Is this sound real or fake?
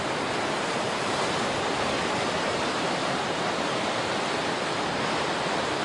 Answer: real